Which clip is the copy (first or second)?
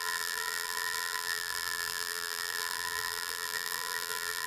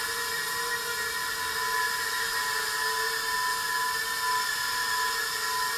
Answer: first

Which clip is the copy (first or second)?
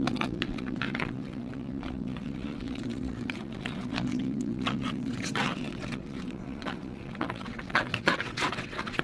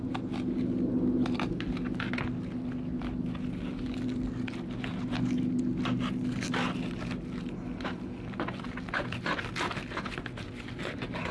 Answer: first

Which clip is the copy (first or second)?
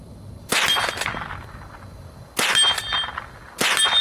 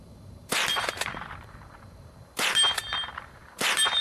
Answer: second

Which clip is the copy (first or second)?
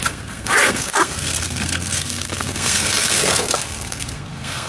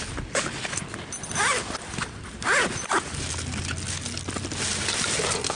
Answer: first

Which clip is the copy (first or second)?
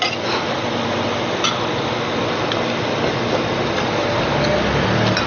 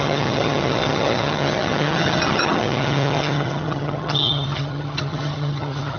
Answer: second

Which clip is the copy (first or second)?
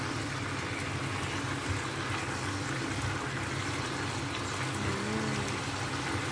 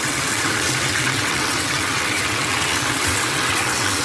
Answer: second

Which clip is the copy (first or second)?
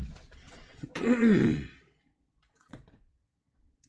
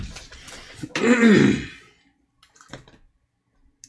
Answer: first